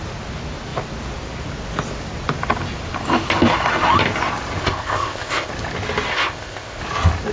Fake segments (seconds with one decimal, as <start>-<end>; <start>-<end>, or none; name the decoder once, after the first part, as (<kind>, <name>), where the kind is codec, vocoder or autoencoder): 4.6-5.5 (codec, ZipCodec); 6.1-6.8